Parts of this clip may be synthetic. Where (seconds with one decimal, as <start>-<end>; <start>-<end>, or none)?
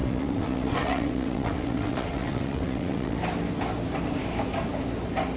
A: 0.0-3.2